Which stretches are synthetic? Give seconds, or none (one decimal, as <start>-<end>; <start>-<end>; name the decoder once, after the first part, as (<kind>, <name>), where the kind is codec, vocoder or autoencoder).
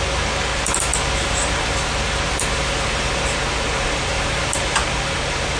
none